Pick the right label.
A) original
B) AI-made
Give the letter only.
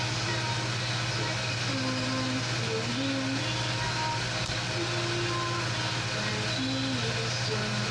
A